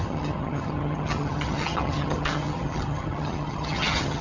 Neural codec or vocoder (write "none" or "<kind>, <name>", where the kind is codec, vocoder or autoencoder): vocoder, HiFi-GAN